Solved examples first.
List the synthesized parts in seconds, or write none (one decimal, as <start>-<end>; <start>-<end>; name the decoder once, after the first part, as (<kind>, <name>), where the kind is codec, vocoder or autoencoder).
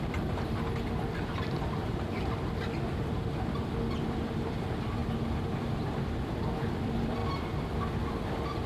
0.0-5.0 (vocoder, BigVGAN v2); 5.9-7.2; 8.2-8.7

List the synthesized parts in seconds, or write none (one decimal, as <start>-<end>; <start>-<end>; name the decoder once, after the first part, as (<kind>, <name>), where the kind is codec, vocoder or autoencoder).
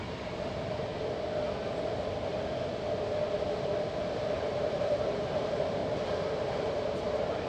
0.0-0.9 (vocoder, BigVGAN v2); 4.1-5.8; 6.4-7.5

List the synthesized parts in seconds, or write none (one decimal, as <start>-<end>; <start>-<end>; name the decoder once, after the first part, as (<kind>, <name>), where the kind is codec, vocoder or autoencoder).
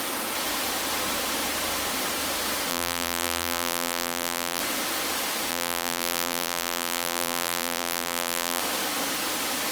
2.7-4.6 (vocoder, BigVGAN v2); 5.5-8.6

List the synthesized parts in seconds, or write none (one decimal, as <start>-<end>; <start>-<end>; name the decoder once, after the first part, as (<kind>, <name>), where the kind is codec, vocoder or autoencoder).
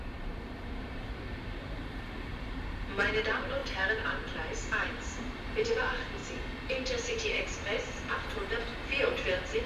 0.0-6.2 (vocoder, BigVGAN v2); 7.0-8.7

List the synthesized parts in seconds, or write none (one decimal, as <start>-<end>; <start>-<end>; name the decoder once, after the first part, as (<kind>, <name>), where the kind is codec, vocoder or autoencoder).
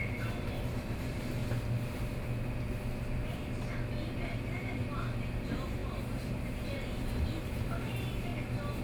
0.0-1.4 (vocoder, BigVGAN v2); 4.0-8.3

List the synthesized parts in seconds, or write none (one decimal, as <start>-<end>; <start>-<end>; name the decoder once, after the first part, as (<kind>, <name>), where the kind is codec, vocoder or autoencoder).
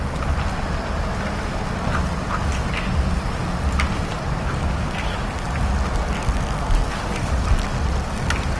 6.9-7.5 (vocoder, BigVGAN v2)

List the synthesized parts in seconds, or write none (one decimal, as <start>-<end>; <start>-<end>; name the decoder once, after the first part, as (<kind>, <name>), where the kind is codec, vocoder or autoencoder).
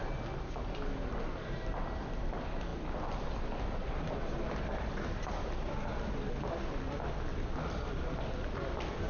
none